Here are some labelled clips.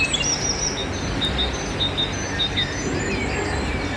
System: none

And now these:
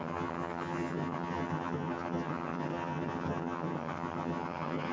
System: vocoder, HiFi-GAN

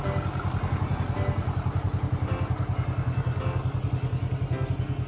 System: none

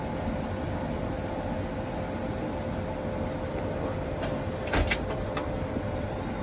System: none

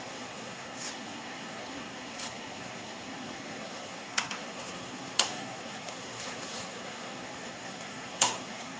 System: codec, SNAC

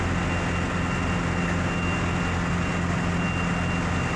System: none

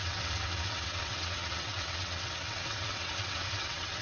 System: vocoder, WaveNeXt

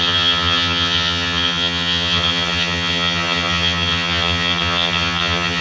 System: vocoder, HiFi-GAN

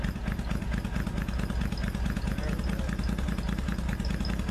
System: none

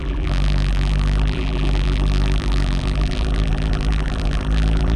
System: vocoder, BigVGAN v2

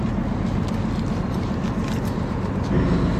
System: none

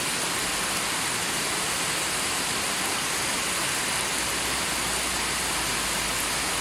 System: none